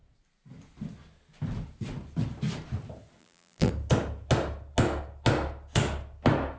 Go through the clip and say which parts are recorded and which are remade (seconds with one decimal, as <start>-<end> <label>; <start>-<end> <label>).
0.0-3.2 recorded; 3.2-3.7 remade; 3.7-6.6 recorded